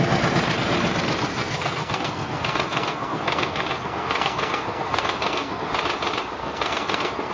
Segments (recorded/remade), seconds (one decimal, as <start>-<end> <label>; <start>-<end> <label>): 0.0-1.3 recorded; 1.3-5.7 remade; 5.7-6.4 recorded; 6.4-7.3 remade